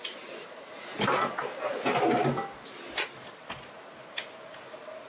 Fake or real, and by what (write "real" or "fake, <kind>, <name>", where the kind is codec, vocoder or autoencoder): real